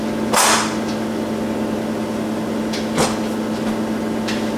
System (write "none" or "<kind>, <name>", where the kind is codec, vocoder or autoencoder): none